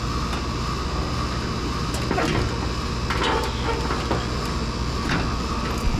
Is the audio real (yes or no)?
yes